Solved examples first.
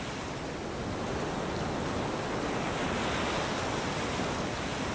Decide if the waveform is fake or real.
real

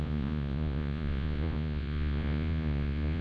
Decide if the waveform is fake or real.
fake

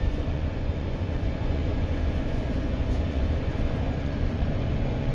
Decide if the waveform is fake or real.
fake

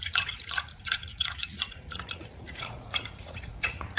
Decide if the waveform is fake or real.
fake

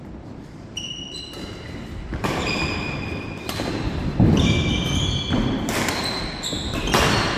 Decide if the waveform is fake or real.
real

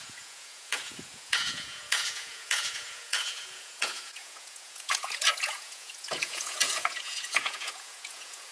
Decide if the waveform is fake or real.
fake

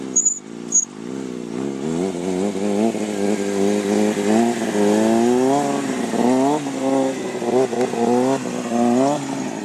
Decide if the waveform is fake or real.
real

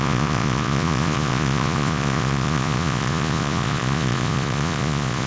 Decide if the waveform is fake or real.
fake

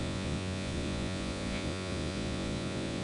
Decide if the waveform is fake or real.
fake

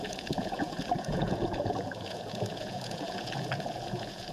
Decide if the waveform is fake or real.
fake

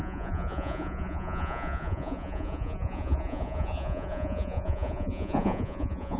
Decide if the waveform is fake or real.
fake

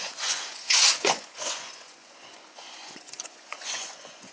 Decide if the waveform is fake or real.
fake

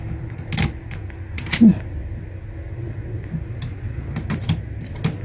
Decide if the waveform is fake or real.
real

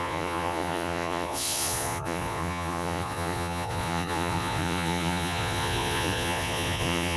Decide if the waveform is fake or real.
fake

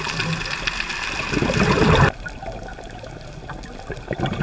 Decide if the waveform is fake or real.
real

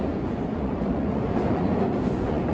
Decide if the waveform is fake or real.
fake